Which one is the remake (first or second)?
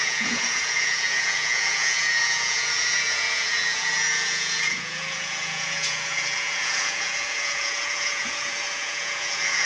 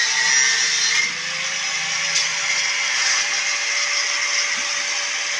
first